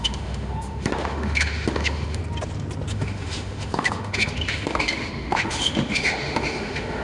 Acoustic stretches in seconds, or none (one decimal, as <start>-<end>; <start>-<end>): 2.2-2.9

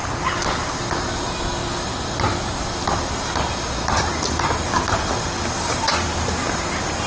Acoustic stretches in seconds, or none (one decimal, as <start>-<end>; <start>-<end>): 0.0-7.1

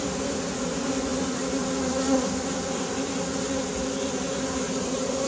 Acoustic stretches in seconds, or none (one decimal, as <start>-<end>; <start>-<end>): 0.0-5.3

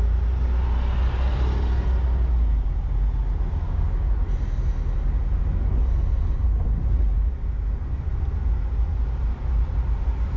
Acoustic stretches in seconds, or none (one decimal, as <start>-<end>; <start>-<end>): 0.0-10.4